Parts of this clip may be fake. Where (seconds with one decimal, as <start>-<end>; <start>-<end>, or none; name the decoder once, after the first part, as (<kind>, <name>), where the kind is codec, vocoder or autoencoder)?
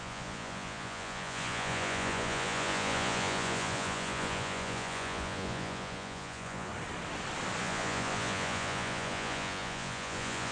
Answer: 0.0-6.7 (vocoder, Vocos); 7.6-10.5